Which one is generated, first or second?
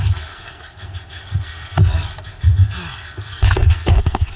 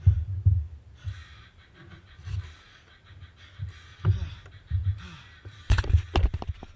first